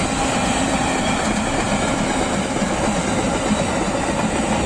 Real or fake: real